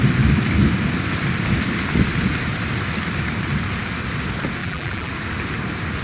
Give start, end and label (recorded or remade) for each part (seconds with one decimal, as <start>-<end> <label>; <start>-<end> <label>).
0.0-4.6 recorded; 4.6-5.1 remade; 5.1-6.0 recorded